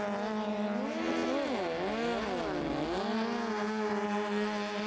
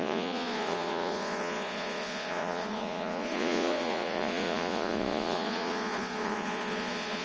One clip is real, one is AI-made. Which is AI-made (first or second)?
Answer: second